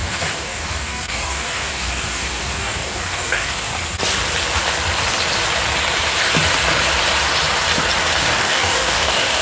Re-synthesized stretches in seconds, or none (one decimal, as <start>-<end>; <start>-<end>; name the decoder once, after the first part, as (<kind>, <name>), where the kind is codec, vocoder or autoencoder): 0.0-3.7 (codec, DAC); 8.2-9.4